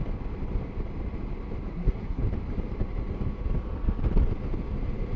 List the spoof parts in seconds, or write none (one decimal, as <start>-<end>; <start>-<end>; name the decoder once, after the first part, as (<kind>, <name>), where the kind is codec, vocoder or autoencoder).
1.7-2.2 (codec, SNAC)